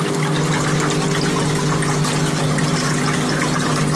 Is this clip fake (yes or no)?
no